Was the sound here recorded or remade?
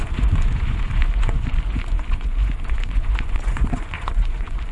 remade